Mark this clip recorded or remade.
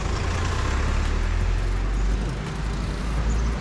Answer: recorded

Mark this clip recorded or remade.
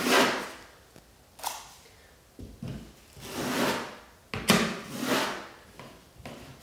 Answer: recorded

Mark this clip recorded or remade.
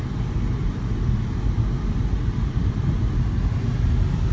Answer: recorded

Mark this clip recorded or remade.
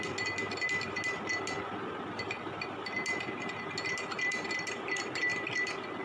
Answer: recorded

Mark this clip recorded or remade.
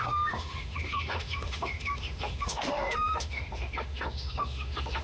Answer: remade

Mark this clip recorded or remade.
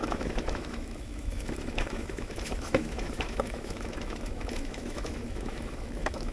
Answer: remade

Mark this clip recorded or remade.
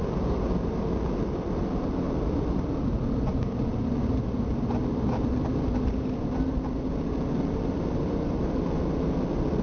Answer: recorded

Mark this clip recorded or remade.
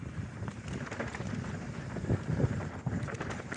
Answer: recorded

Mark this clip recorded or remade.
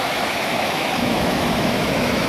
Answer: remade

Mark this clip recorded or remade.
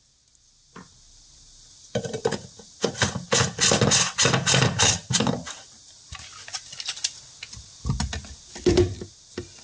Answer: recorded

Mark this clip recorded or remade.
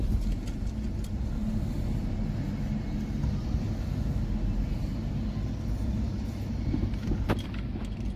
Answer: recorded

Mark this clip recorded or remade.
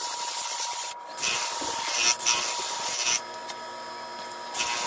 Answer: recorded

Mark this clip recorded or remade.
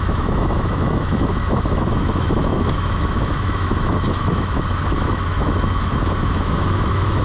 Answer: remade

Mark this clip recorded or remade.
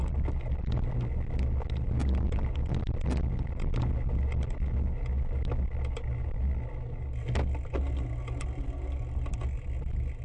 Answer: recorded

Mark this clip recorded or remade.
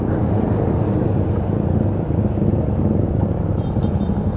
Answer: recorded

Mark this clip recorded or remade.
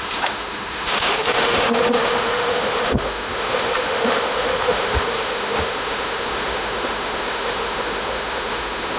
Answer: remade